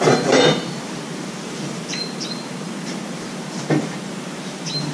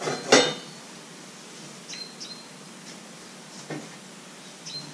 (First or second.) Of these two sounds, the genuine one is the second